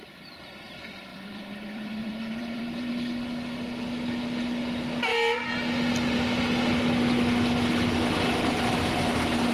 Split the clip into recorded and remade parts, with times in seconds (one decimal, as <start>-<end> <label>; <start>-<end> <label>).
0.0-1.1 recorded; 1.1-2.9 remade; 2.9-9.5 recorded